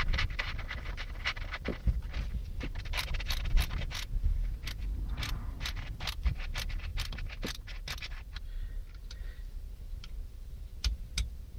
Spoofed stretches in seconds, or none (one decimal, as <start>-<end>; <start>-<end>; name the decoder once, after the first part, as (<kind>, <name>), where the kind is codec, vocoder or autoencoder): 0.0-11.6 (vocoder, BigVGAN v2)